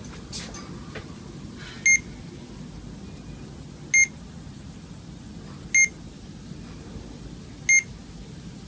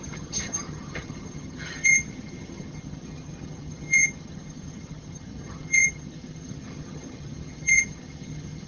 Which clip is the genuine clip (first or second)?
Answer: first